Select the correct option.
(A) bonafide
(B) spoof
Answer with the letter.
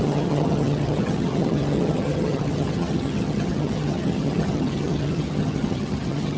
B